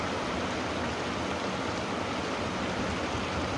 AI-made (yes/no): no